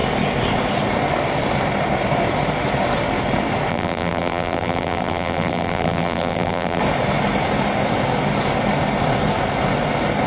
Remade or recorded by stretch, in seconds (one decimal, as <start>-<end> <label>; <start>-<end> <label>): 0.0-3.7 recorded; 3.7-6.8 remade; 6.8-10.3 recorded